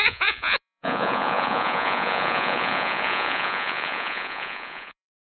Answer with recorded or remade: remade